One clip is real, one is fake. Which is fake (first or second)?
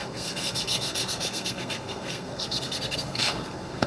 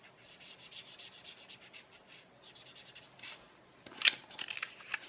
first